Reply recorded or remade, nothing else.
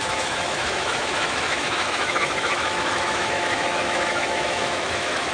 remade